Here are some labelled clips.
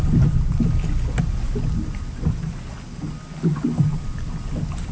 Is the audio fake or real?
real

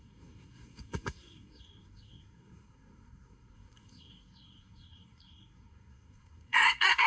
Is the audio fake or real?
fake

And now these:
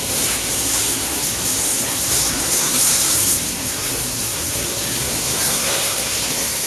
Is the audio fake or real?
fake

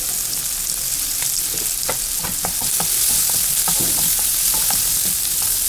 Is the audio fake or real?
real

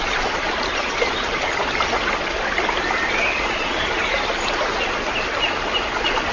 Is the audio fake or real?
real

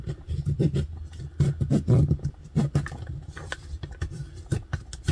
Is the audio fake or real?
real